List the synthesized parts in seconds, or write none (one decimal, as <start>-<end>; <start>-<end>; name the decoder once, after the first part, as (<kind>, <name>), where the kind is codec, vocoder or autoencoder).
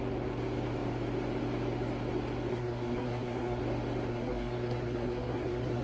2.5-3.6 (codec, SNAC); 4.1-5.8